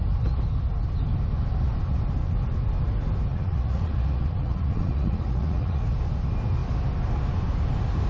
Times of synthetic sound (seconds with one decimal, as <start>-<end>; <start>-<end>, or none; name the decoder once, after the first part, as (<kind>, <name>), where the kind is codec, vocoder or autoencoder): 3.3-5.8 (vocoder, Vocos)